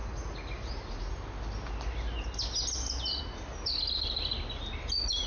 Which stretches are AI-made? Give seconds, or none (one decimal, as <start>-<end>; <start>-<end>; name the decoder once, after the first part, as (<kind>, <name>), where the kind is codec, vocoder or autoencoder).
none